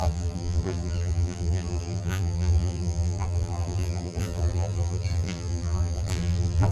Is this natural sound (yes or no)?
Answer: no